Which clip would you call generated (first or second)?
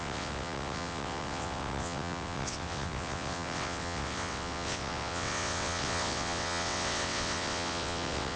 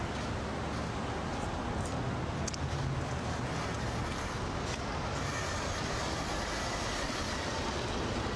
first